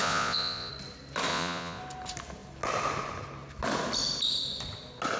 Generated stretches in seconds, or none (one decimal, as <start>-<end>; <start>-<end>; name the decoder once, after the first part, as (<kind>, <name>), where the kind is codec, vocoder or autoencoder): 0.0-0.7 (vocoder, Vocos); 1.3-1.8